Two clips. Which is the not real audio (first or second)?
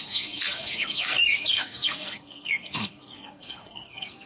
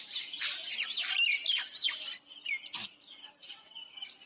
first